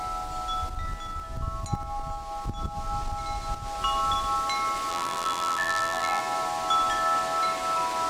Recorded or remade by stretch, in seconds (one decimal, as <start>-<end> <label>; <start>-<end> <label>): 0.0-4.9 recorded; 4.9-6.2 remade; 6.2-8.1 recorded